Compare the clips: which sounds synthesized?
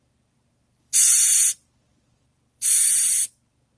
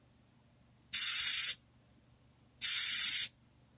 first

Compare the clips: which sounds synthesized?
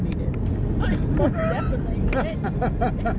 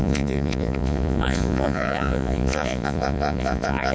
second